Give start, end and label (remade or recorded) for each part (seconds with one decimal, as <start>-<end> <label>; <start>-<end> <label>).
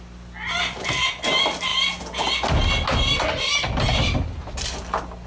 0.0-5.3 recorded